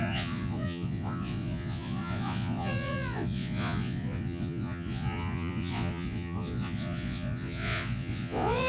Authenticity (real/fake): fake